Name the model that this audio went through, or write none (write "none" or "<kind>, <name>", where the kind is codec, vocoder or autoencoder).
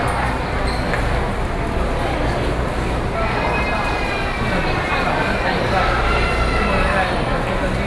none